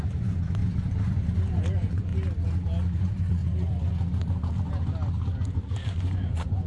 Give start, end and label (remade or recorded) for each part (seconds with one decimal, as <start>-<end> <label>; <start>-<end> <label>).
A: 0.0-0.6 remade; 0.6-1.7 recorded; 1.7-2.1 remade; 2.1-3.0 recorded; 3.0-3.4 remade; 3.4-5.9 recorded; 5.9-6.7 remade